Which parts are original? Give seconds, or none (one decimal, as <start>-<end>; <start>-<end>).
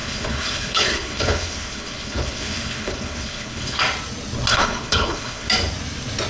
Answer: 3.8-4.5; 5.5-6.3